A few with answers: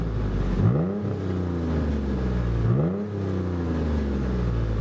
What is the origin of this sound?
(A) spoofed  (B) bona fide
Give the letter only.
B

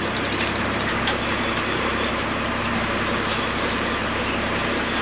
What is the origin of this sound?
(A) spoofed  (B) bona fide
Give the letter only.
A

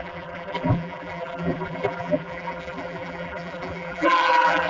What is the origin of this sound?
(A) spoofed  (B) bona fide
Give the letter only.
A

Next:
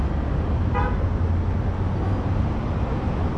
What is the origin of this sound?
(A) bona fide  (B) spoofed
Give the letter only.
A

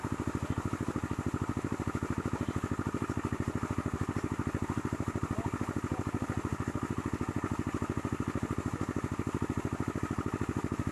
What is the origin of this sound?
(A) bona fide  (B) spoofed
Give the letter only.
A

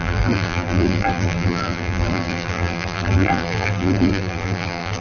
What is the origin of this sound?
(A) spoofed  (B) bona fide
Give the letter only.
A